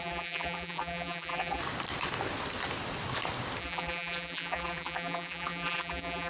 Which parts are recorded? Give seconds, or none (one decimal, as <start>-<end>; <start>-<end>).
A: 1.6-3.6